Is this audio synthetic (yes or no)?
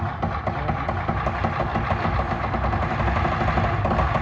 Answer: no